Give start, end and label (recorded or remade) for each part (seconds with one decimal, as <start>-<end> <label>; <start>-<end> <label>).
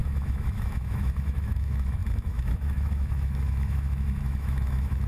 0.0-5.1 remade